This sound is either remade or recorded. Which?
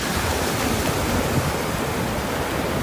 recorded